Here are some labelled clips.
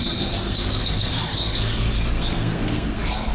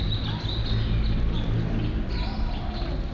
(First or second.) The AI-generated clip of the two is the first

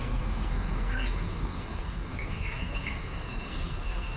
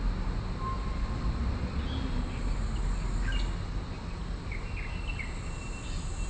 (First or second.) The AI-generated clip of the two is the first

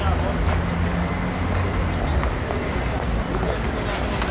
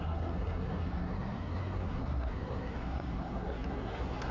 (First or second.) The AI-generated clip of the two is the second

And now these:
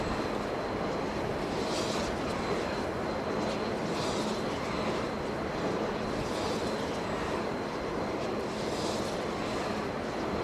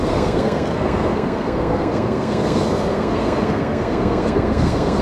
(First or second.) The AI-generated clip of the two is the second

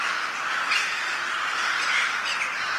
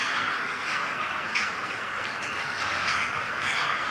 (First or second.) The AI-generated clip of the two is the second